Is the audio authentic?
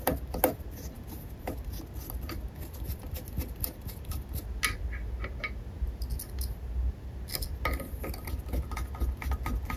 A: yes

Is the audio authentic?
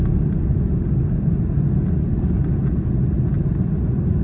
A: yes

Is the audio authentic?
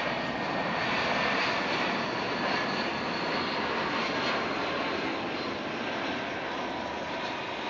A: yes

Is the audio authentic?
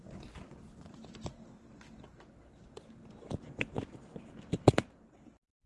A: no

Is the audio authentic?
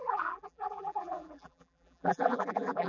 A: no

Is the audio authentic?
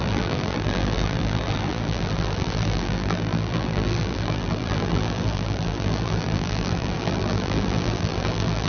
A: no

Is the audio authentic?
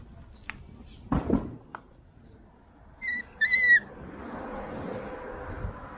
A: yes